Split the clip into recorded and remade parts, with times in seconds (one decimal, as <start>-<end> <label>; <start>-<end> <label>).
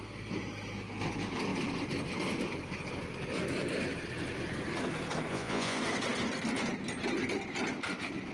0.0-5.3 recorded; 5.3-5.8 remade; 5.8-8.3 recorded